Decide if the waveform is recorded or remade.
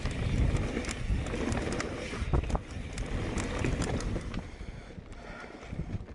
recorded